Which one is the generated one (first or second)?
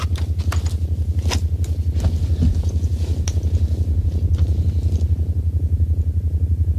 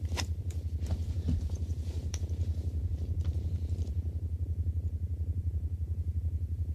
second